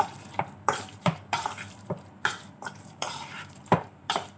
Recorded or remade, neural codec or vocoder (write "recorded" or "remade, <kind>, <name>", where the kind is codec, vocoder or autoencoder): remade, vocoder, BigVGAN v2